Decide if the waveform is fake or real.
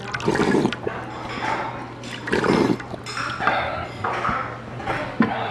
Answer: real